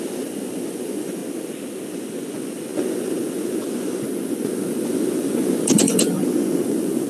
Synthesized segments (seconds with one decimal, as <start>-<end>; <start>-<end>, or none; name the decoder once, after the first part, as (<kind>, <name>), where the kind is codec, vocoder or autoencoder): 0.0-1.2 (vocoder, Vocos); 1.9-7.1